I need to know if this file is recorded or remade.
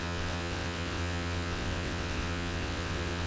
remade